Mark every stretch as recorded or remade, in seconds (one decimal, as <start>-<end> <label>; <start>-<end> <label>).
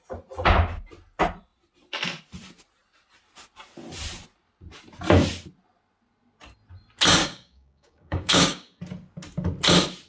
0.0-7.2 recorded; 7.2-8.8 remade; 8.8-10.1 recorded